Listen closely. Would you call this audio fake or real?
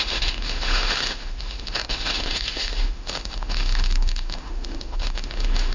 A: fake